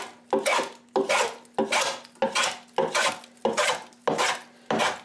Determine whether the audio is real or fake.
real